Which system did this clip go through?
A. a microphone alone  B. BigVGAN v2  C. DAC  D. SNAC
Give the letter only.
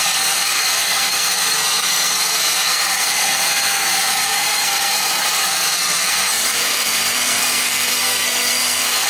D